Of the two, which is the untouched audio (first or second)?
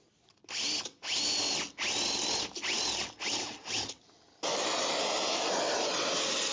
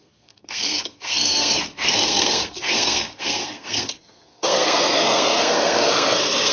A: first